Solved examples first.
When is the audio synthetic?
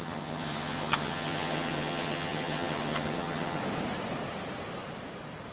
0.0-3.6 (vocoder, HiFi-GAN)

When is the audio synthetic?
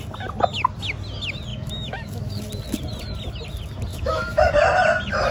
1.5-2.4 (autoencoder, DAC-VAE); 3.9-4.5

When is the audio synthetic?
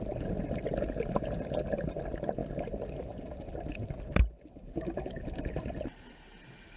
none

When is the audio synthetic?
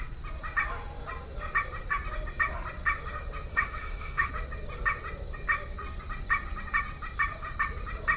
3.5-4.3 (autoencoder, DAC-VAE)